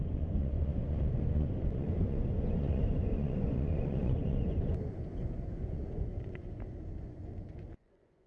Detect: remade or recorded remade